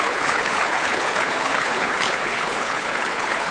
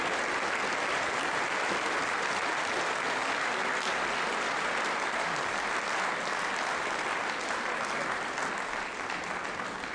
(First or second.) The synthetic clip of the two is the first